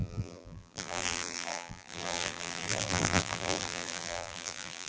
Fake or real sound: fake